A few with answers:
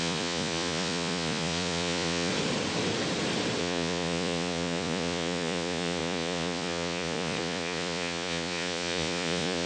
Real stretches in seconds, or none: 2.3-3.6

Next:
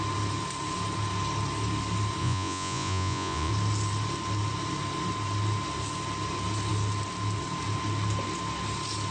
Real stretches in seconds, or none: 0.0-2.2; 3.5-9.1

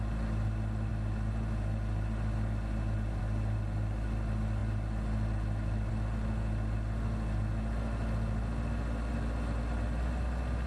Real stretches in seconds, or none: 0.0-10.7

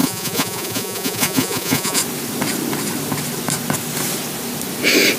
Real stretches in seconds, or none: 2.0-5.2

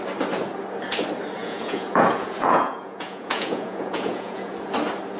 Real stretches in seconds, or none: 0.0-1.4; 4.5-5.2

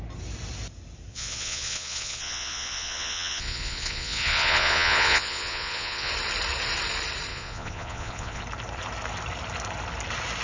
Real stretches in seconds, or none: 0.0-1.1; 6.1-7.3; 8.4-10.4

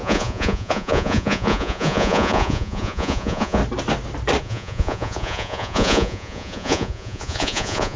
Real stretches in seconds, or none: 3.6-4.4

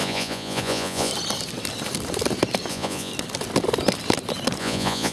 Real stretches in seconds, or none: 1.1-2.7; 3.1-4.6